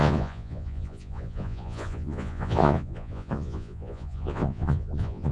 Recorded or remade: remade